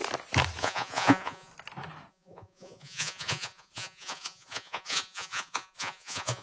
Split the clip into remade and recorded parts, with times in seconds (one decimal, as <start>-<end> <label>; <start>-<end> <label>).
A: 0.0-0.6 recorded; 0.6-1.5 remade; 1.5-2.1 recorded; 2.1-6.4 remade